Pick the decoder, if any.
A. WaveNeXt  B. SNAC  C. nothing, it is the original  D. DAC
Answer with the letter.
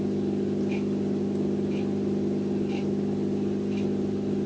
C